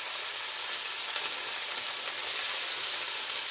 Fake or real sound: real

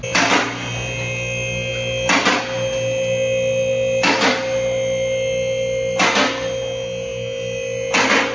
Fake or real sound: real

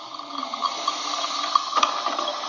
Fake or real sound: real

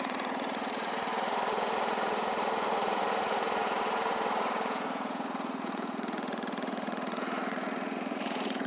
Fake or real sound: fake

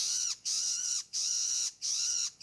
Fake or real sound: fake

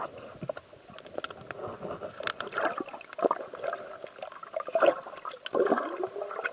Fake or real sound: real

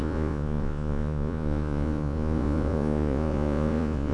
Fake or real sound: fake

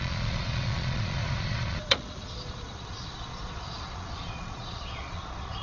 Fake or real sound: fake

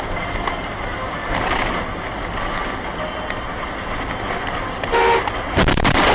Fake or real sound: real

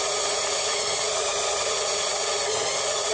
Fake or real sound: fake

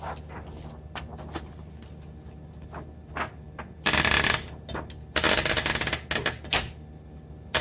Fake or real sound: real